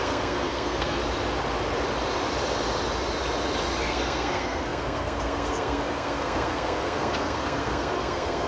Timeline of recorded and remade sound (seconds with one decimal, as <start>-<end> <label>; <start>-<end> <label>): 0.0-1.0 remade; 1.0-3.8 recorded; 3.8-8.5 remade